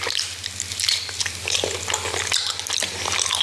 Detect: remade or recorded recorded